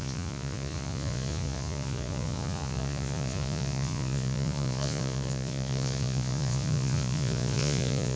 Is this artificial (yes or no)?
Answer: yes